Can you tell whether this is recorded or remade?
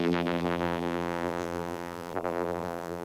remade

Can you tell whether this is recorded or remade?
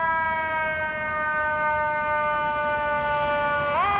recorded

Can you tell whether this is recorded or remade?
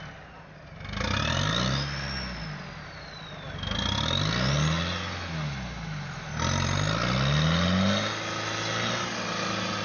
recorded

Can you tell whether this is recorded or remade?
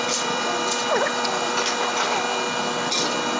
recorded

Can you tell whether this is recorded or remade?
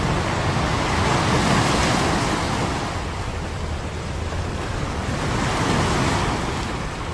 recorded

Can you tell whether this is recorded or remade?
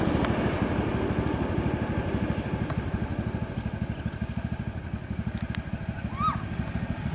recorded